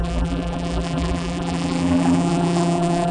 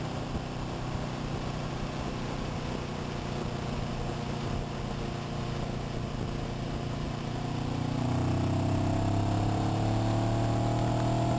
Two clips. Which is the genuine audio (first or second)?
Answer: second